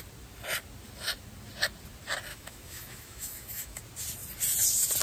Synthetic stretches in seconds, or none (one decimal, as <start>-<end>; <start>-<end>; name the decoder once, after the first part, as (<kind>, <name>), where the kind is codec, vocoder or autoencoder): 2.3-3.8 (autoencoder, DAC-VAE)